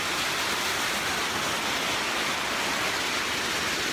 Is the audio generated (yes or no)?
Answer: no